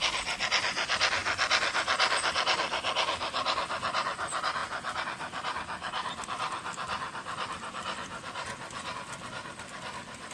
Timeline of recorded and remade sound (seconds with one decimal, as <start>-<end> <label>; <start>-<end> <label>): 0.0-10.3 recorded